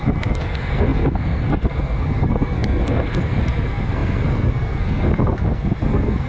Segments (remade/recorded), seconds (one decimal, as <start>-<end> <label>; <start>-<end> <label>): 0.0-6.3 remade

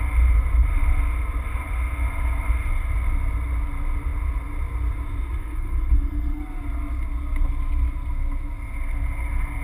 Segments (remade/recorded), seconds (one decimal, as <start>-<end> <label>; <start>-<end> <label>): 0.0-5.4 recorded; 5.4-6.4 remade; 6.4-9.6 recorded

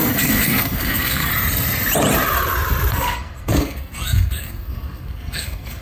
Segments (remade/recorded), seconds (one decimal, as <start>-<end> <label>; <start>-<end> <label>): 0.0-1.3 remade; 1.3-2.9 recorded; 2.9-5.8 remade